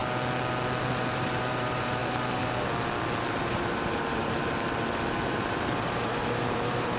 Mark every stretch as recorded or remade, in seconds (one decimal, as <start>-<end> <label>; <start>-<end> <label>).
0.0-0.8 recorded; 0.8-2.0 remade; 2.0-3.3 recorded; 3.3-7.0 remade